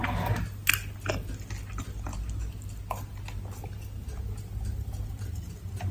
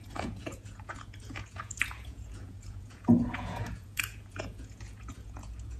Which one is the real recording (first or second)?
first